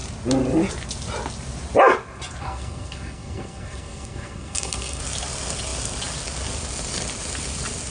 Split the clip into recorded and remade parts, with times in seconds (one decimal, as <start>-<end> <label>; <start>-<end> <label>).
0.0-2.4 recorded; 2.4-5.0 remade; 5.0-7.9 recorded